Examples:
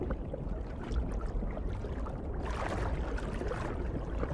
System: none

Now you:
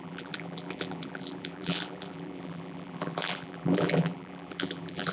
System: vocoder, BigVGAN v2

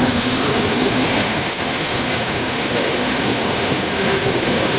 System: autoencoder, DAC-VAE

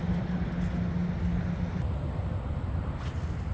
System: none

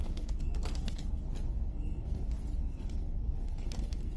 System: codec, SNAC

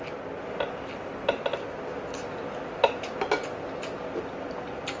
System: none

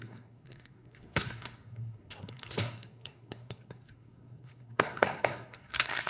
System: codec, SNAC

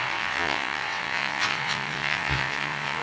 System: vocoder, WaveNeXt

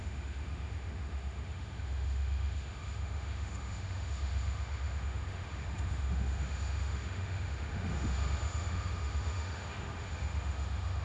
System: autoencoder, DAC-VAE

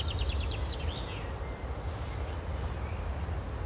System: none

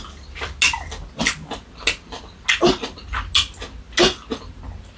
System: none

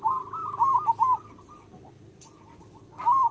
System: none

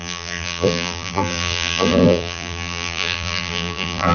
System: vocoder, BigVGAN v2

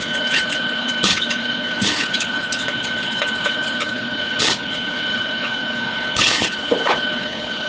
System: codec, HILCodec